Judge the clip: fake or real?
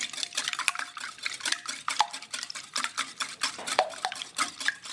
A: real